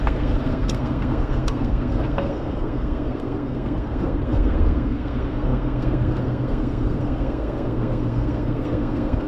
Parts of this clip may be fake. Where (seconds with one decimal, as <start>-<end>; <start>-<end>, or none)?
0.0-9.3